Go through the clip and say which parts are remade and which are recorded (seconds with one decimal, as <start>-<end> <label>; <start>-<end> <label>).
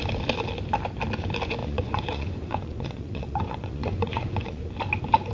0.0-1.6 recorded; 1.6-4.7 remade; 4.7-5.3 recorded